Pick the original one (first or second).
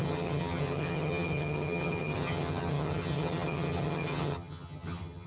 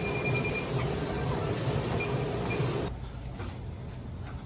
second